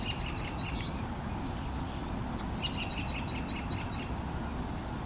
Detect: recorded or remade recorded